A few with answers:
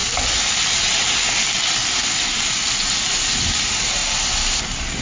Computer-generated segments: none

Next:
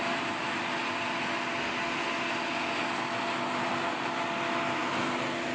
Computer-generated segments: none

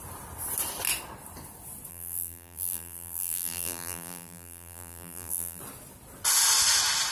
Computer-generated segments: 1.9-5.6 (vocoder, BigVGAN v2)